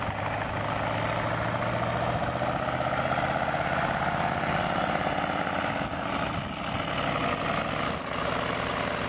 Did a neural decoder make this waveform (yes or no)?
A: no